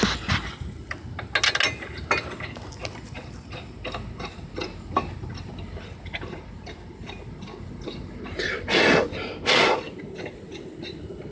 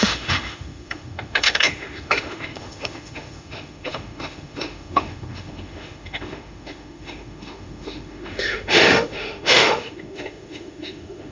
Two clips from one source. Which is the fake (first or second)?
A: second